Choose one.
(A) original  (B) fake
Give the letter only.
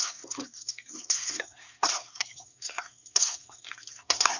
B